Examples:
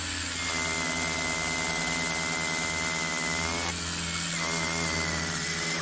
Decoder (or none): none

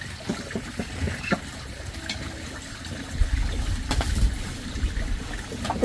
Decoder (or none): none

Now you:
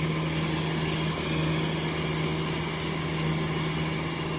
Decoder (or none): none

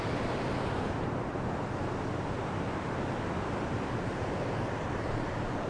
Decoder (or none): none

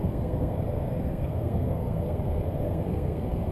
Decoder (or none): codec, SNAC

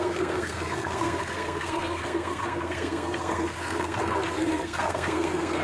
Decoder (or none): codec, SNAC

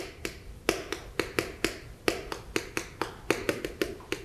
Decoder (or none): none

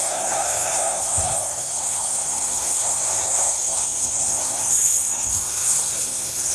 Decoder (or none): codec, SNAC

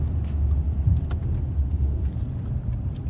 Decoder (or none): none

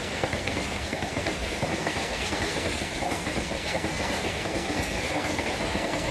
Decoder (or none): codec, SNAC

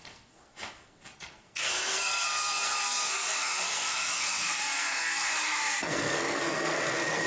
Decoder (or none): codec, SNAC